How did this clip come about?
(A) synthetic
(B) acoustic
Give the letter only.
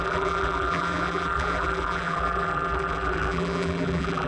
A